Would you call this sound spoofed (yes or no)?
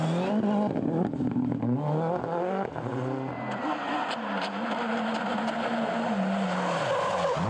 no